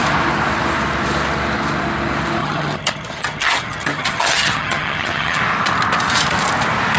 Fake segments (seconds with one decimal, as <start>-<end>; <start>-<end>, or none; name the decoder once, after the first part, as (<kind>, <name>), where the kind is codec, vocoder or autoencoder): 2.4-5.4 (vocoder, HiFi-GAN)

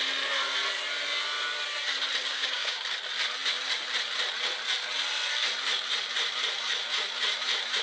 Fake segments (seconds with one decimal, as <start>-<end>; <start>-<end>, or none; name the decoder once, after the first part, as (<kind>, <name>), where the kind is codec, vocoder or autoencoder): 2.3-2.8 (codec, DAC)

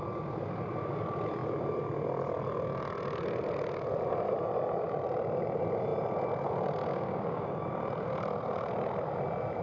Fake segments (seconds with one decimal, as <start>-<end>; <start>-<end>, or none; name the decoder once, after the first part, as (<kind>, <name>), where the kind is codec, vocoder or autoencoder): 6.9-7.8 (codec, DAC)

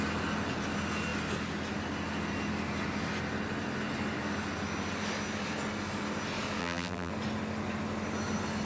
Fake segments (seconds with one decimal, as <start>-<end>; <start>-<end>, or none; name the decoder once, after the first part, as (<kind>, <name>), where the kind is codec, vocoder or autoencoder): 6.6-7.1 (vocoder, BigVGAN v2)